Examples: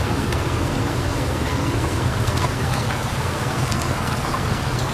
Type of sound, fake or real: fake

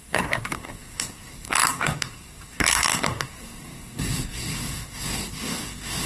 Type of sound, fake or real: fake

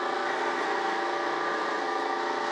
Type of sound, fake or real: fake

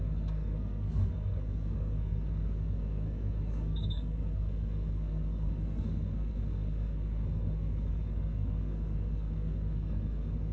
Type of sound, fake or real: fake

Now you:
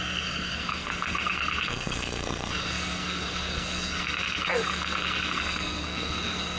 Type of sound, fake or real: fake